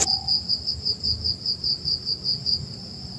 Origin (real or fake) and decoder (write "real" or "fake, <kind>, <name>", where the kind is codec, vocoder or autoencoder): real